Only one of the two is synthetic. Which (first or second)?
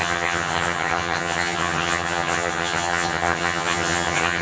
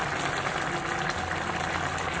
first